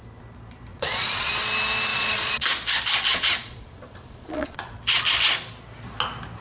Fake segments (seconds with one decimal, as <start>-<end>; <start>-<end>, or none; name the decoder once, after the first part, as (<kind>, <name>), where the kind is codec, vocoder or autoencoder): 0.7-1.3 (vocoder, Vocos); 1.9-2.5; 3.1-4.8